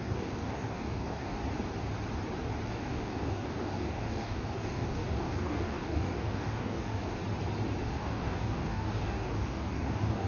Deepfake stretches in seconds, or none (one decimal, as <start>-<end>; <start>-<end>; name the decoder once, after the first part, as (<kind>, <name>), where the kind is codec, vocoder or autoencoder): 0.0-1.4 (codec, DAC); 2.7-7.2; 7.8-10.3